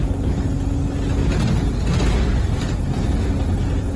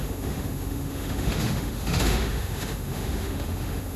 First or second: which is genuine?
first